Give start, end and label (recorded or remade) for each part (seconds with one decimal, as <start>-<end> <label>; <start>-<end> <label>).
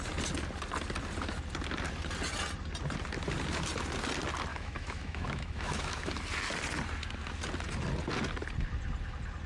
0.0-4.5 recorded; 4.5-6.1 remade; 6.1-9.5 recorded